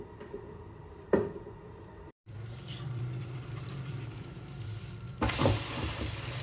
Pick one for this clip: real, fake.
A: fake